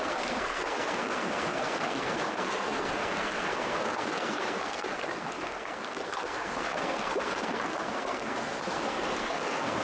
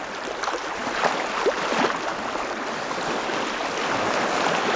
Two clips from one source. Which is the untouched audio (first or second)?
second